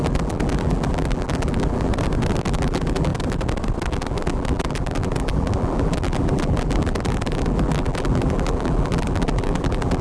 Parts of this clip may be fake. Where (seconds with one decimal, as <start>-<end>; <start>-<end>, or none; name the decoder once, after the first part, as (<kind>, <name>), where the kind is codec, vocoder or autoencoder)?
0.0-1.9 (vocoder, BigVGAN v2); 2.5-3.1; 3.9-10.0